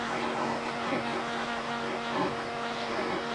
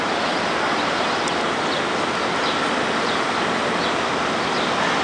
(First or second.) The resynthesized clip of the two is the first